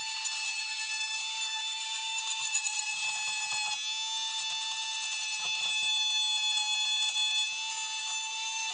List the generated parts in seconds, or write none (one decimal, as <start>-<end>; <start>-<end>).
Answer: 0.0-3.0; 8.0-8.7